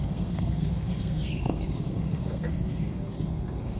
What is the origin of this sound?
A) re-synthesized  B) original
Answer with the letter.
A